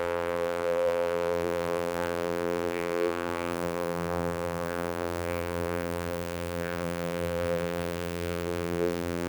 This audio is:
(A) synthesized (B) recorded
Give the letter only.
A